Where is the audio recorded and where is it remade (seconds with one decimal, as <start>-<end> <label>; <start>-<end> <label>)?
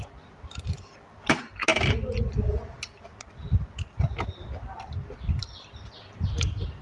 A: 0.0-6.8 recorded